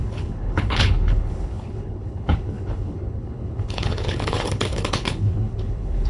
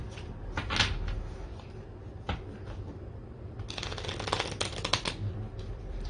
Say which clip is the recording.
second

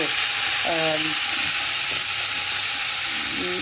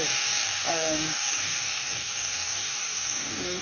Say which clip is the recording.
first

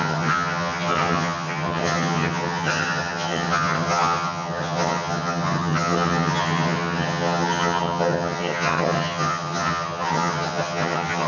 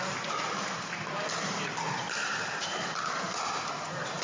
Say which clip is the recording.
second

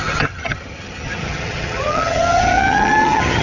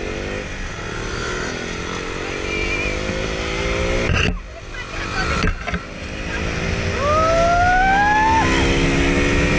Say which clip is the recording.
second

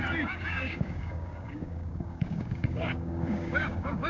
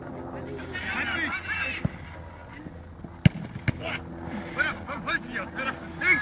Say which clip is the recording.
second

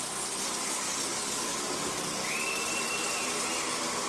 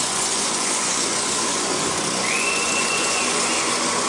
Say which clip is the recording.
first